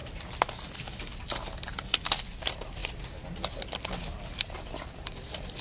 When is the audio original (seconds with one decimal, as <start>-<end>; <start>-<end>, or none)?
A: 0.0-1.2; 2.8-4.4